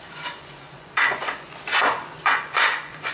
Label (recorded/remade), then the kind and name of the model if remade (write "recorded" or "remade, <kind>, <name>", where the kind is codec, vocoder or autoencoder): remade, vocoder, Vocos